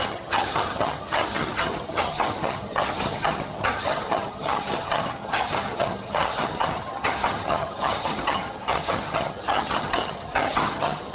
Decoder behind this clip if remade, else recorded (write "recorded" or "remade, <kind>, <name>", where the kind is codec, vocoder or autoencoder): remade, vocoder, HiFi-GAN